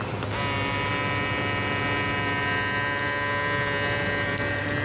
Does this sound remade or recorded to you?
recorded